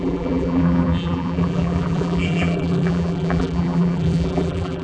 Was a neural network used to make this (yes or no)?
yes